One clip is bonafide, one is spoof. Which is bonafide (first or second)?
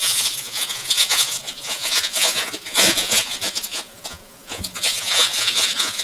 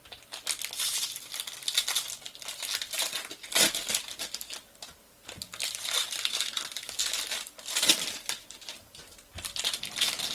second